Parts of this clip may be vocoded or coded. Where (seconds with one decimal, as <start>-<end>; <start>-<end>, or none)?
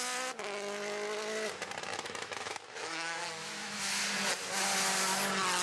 1.9-4.0